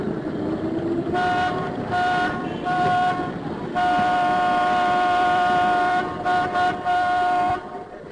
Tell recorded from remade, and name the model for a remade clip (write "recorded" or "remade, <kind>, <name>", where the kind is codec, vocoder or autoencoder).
recorded